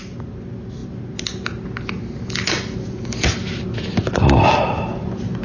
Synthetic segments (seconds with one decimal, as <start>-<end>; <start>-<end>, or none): none